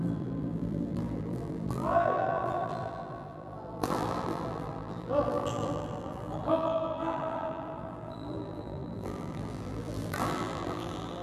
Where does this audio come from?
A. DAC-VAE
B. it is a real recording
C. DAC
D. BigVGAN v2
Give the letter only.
D